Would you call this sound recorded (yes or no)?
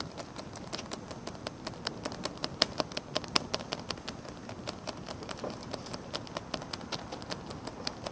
yes